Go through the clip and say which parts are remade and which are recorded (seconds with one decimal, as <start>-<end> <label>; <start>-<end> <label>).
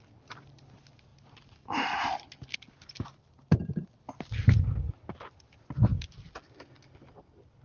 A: 0.0-7.6 recorded